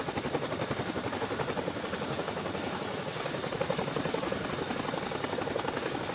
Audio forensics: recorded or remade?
recorded